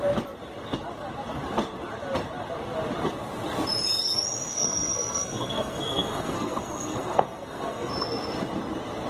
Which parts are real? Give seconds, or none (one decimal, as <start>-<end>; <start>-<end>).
0.0-4.5; 7.9-9.1